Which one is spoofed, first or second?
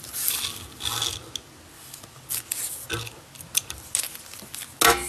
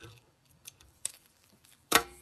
second